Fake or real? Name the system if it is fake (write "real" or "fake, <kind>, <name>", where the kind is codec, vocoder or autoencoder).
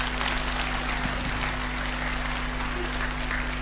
real